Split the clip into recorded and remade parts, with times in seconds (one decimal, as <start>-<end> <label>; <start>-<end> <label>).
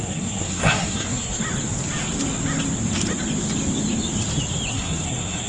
0.0-1.4 remade; 1.4-4.7 recorded; 4.7-5.5 remade